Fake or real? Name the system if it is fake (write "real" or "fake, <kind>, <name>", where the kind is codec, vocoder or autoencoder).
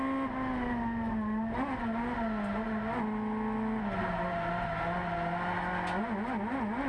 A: real